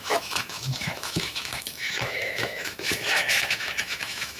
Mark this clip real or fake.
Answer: fake